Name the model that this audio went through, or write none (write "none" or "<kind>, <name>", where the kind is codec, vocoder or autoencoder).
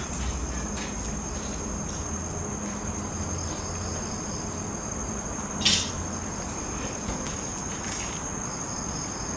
none